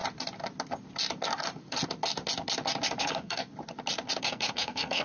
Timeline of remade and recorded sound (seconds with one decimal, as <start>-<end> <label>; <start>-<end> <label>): 0.0-3.0 recorded; 3.0-3.4 remade; 3.4-4.2 recorded; 4.2-5.0 remade